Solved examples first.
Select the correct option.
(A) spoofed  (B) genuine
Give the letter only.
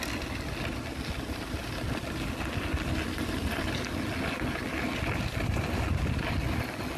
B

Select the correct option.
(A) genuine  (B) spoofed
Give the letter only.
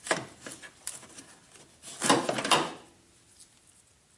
A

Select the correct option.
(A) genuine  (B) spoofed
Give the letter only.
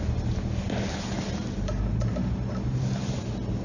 A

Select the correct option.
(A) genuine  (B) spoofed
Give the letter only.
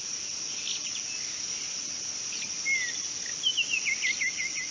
A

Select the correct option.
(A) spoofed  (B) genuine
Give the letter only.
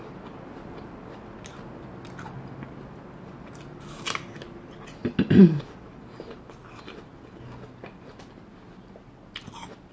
B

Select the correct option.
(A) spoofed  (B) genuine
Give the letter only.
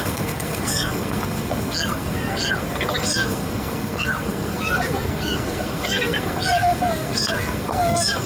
A